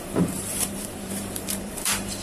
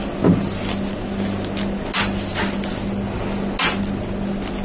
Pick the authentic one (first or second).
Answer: second